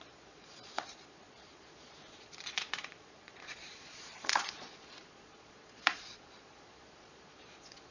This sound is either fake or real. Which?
fake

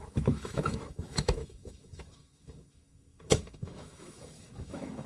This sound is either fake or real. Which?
fake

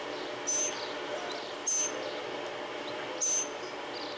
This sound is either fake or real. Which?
real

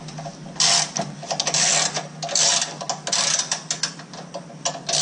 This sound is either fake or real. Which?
real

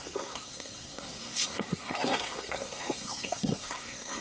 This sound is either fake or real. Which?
fake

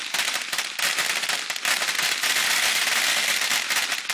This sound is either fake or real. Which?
real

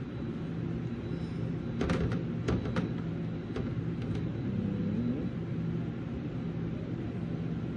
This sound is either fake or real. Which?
real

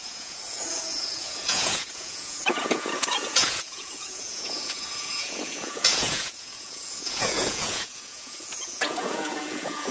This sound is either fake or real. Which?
fake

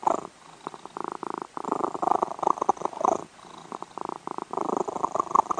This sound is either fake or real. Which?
real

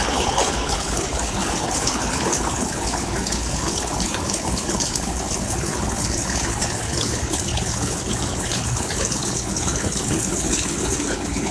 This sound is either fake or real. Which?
fake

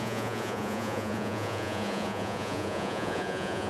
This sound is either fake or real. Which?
fake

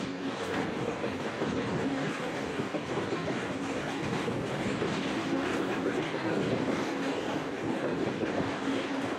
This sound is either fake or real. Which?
fake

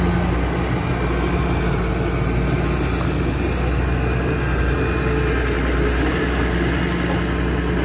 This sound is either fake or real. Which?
real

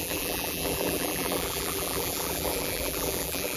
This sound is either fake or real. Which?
fake